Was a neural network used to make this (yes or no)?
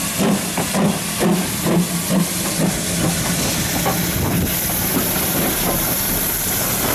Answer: no